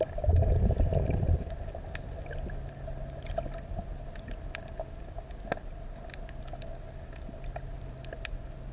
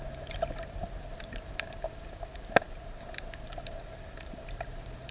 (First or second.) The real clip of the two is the first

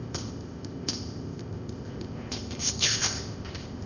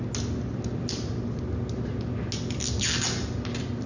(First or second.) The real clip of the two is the second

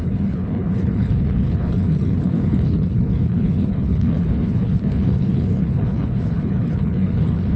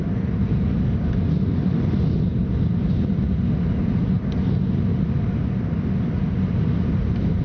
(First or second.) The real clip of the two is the second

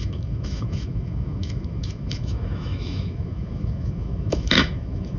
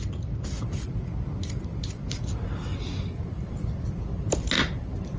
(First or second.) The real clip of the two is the second